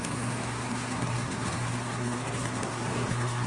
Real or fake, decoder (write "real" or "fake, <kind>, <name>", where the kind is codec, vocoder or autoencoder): fake, codec, SNAC